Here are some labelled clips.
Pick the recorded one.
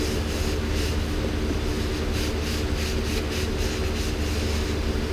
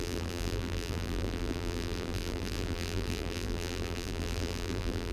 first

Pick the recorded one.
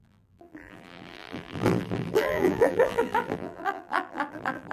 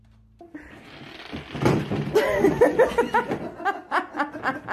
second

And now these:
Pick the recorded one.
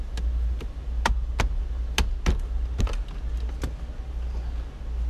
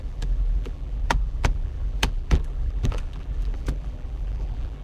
first